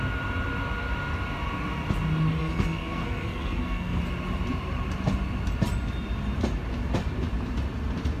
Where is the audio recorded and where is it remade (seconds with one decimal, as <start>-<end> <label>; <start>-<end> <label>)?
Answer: 0.0-2.4 recorded; 2.4-4.0 remade; 4.0-8.2 recorded